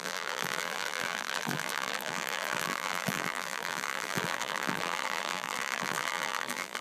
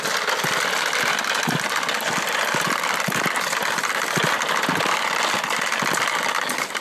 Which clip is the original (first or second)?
second